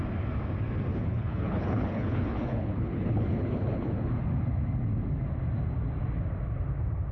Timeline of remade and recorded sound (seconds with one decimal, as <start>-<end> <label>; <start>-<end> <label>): 0.0-0.9 recorded; 0.9-4.1 remade; 4.1-7.1 recorded